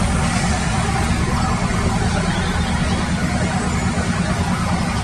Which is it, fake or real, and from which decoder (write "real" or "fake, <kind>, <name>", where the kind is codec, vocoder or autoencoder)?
real